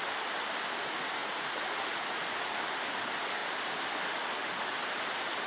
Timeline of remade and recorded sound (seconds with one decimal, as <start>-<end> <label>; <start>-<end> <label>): 0.0-1.2 recorded; 1.2-2.6 remade; 2.6-5.5 recorded